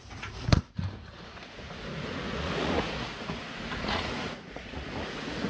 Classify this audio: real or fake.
fake